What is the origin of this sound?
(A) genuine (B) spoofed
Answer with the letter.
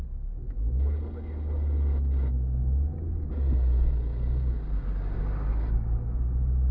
A